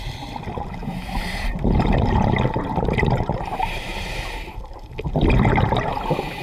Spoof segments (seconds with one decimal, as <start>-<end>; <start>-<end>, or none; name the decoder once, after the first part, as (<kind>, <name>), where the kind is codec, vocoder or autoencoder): 0.8-4.6 (vocoder, BigVGAN v2)